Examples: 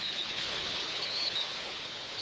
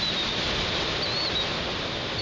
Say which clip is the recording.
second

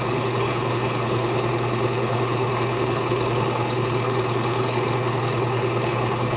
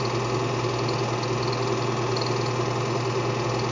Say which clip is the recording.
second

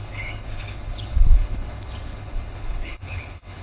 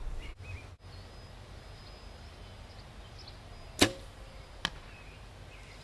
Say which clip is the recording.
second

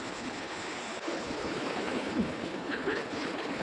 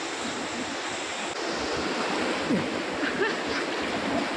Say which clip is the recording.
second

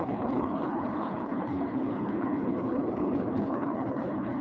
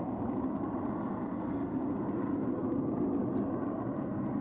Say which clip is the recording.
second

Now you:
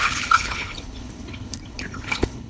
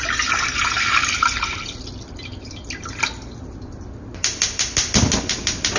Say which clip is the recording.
second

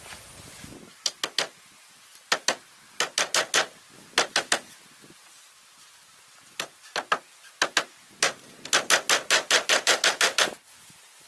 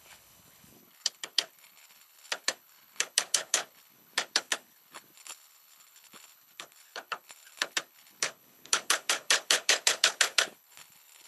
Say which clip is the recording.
first